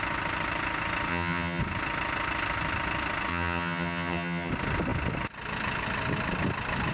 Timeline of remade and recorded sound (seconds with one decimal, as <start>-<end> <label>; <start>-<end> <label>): 0.0-1.1 recorded; 1.1-1.6 remade; 1.6-3.3 recorded; 3.3-4.5 remade; 4.5-6.9 recorded